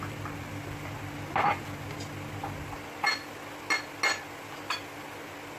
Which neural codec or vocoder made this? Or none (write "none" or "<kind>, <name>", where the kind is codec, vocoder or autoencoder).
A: none